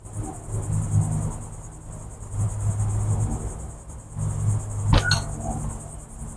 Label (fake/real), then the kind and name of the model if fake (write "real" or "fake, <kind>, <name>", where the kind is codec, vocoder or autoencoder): real